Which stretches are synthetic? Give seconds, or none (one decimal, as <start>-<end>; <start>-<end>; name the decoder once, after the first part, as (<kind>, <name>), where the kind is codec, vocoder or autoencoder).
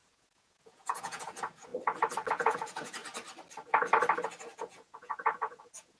0.0-1.7 (vocoder, Vocos); 2.3-3.0; 4.6-6.0